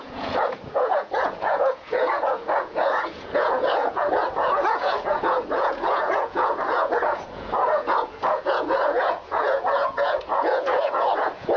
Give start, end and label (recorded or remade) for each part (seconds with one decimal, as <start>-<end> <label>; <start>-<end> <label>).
0.0-11.6 remade